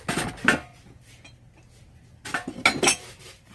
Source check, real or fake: real